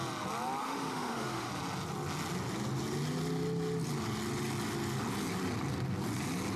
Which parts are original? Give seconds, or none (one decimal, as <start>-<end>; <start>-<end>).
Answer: 0.0-0.6; 1.5-6.6